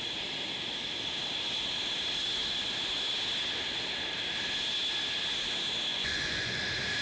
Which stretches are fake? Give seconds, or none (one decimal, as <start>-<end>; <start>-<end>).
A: 5.9-6.6